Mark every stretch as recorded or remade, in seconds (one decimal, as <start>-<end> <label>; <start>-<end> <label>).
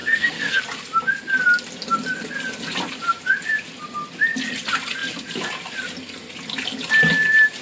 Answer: 0.0-0.6 remade; 0.6-7.6 recorded